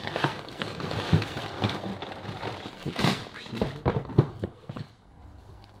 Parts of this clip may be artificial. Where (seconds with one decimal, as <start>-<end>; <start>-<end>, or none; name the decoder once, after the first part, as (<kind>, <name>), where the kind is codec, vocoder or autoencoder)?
0.0-1.9 (codec, SNAC); 2.7-3.2; 3.9-5.8